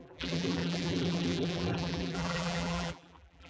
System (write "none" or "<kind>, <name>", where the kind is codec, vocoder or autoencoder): vocoder, BigVGAN v2